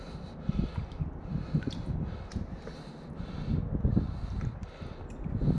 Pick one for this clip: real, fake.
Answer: real